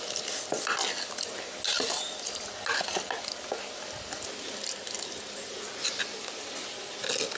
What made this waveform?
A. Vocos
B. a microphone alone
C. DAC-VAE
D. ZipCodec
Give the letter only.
B